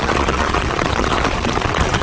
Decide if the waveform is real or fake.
fake